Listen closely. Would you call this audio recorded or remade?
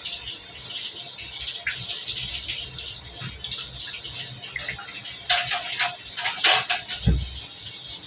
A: recorded